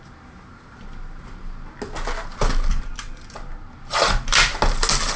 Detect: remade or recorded recorded